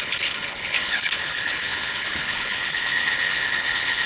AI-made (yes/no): yes